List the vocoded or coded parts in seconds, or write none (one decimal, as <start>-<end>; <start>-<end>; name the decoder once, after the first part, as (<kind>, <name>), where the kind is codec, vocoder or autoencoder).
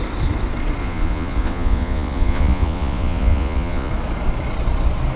0.8-3.9 (vocoder, Vocos)